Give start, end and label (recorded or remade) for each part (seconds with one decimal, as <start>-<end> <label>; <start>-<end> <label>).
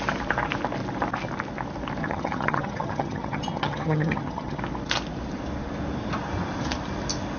0.0-2.0 recorded; 2.0-4.6 remade; 4.6-7.4 recorded